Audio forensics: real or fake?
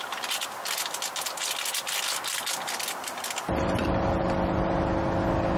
real